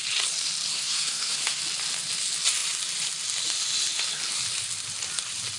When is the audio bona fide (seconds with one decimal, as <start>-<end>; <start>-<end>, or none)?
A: 0.0-0.7; 1.6-5.6